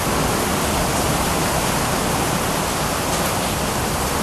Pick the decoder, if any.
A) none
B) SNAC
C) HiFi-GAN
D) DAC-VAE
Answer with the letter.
A